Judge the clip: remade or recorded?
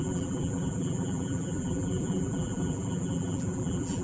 remade